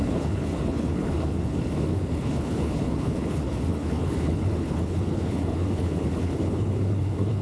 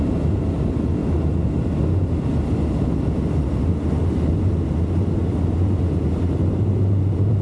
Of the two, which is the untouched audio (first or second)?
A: second